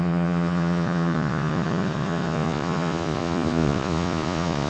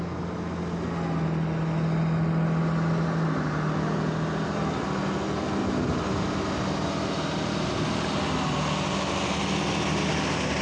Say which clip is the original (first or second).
second